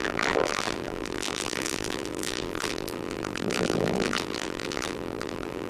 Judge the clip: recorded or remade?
remade